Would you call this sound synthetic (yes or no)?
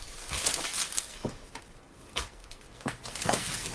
yes